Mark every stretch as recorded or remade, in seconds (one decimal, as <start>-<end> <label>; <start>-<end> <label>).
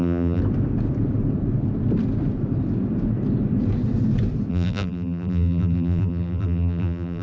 0.0-0.4 remade; 0.4-4.5 recorded; 4.5-7.2 remade